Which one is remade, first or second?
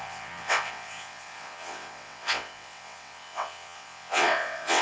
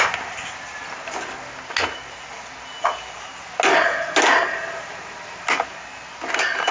first